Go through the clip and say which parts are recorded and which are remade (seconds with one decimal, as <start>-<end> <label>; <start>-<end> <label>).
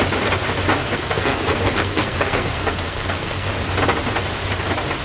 0.0-0.8 recorded; 0.8-3.5 remade; 3.5-5.0 recorded